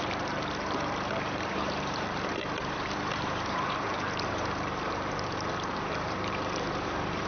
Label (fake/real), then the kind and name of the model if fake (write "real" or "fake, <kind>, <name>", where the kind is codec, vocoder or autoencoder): fake, vocoder, BigVGAN v2